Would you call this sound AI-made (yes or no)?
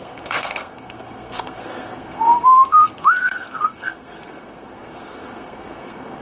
yes